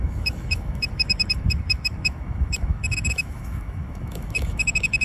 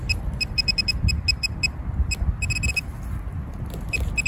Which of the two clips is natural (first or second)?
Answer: second